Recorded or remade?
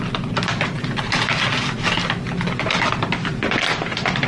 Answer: recorded